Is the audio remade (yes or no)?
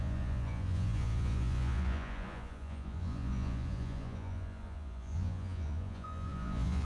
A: yes